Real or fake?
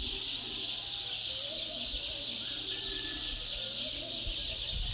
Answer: real